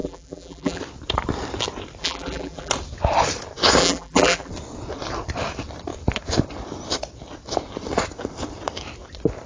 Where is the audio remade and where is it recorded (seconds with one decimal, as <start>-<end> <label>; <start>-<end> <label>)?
0.0-0.8 remade; 0.8-2.0 recorded; 2.0-2.7 remade; 2.7-3.8 recorded; 3.8-4.5 remade; 4.5-9.5 recorded